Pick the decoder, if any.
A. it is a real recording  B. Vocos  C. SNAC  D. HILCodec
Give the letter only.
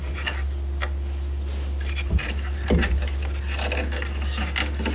A